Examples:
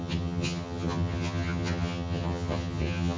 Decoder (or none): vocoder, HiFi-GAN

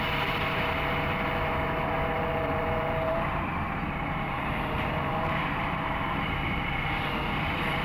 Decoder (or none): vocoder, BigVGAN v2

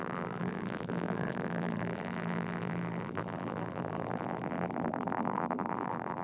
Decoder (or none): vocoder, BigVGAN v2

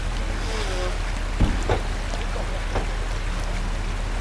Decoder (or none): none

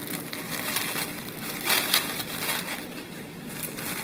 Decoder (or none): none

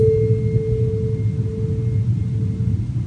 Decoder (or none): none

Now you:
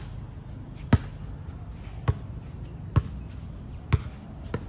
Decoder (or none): none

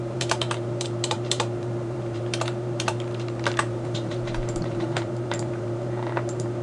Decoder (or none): vocoder, BigVGAN v2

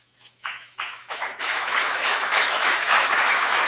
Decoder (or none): autoencoder, DAC-VAE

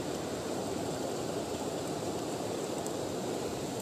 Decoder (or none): vocoder, BigVGAN v2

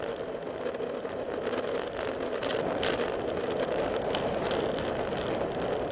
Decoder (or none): none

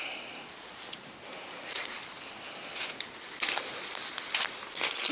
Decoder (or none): none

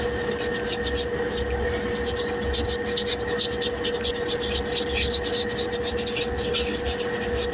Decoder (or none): none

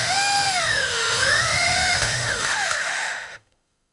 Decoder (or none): autoencoder, DAC-VAE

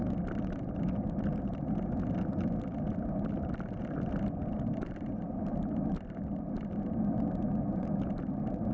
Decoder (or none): vocoder, BigVGAN v2